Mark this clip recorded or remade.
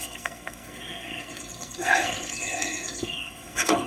remade